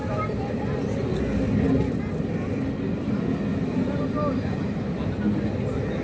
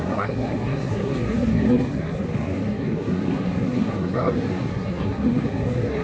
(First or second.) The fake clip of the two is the second